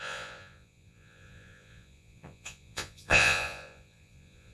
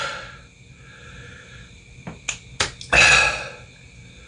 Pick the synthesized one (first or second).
first